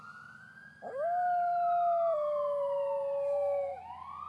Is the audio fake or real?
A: real